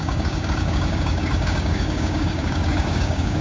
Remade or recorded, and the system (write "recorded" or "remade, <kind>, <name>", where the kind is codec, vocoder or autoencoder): remade, codec, DAC